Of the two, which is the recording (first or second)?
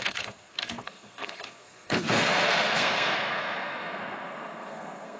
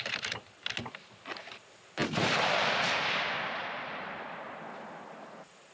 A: second